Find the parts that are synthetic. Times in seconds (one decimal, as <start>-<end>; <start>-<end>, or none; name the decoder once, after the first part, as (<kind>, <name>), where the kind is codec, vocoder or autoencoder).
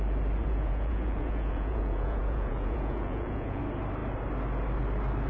0.4-3.6 (vocoder, Vocos)